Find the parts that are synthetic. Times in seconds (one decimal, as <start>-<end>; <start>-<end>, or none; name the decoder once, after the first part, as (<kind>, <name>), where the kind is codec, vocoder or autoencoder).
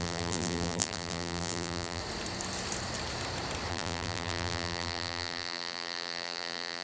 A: 0.0-2.0 (vocoder, BigVGAN v2); 3.7-6.8